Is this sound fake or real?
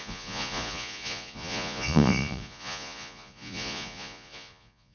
fake